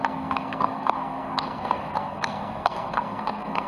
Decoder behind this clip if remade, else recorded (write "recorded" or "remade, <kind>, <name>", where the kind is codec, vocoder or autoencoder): remade, codec, SNAC